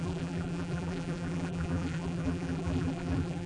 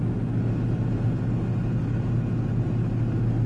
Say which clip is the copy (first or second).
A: first